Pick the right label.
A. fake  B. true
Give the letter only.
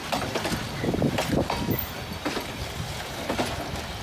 B